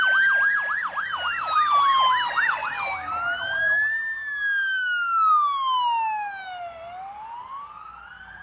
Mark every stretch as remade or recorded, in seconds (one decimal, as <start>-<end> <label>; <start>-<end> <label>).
0.0-8.4 recorded